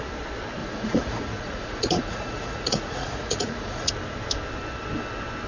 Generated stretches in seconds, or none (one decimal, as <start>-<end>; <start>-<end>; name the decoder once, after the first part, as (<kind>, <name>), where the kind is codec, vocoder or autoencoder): 0.6-3.9 (vocoder, Vocos)